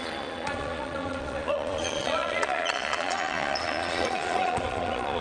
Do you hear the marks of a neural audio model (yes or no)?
yes